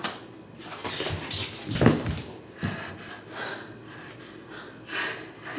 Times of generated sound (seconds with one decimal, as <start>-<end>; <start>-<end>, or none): none